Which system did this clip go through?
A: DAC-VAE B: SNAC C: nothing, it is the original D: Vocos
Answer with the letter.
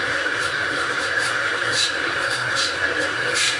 B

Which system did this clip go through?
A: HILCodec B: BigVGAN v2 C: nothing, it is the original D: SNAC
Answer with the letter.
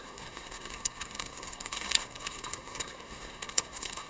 D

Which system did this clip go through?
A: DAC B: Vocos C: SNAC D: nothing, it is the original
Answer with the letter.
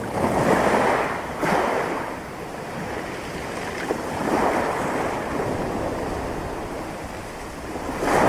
D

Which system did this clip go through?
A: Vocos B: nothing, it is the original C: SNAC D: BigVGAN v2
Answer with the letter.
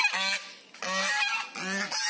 B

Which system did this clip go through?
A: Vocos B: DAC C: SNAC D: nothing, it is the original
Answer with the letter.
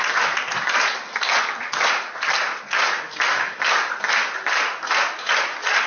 D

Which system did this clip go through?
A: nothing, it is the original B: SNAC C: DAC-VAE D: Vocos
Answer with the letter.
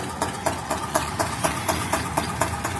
D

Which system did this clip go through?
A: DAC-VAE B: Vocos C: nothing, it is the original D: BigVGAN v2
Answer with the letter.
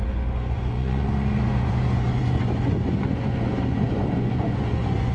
B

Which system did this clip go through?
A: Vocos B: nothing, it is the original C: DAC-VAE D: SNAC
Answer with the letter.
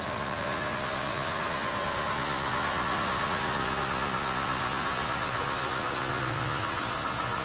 A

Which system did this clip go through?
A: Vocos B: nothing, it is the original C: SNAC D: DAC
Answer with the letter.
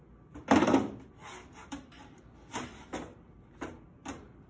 B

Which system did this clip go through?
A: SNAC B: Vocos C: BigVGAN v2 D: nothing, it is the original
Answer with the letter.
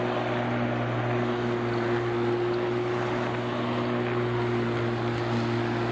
D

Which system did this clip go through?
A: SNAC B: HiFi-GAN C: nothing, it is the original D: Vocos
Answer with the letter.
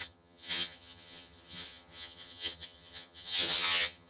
B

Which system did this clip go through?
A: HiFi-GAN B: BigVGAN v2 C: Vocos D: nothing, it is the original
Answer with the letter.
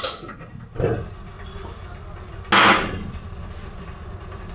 D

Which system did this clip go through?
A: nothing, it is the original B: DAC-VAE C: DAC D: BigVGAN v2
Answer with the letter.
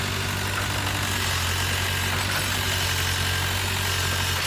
A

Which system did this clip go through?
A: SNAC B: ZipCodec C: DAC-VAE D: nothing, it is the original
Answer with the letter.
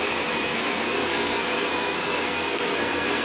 A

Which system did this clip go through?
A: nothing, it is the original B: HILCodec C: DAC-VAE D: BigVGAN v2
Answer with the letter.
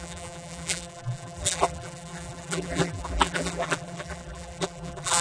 D